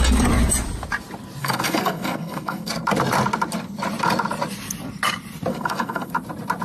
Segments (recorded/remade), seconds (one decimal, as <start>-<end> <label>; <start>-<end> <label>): 0.0-1.4 recorded; 1.4-2.7 remade; 2.7-5.5 recorded; 5.5-6.1 remade; 6.1-6.6 recorded